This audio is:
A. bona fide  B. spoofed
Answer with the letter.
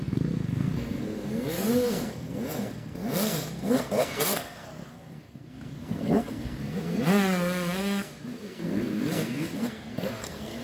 B